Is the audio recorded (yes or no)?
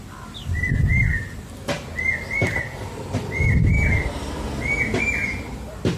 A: yes